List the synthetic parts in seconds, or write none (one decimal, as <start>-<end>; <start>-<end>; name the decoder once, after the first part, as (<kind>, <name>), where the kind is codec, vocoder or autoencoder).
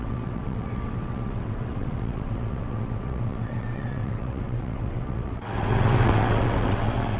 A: 0.0-7.2 (vocoder, WaveNeXt)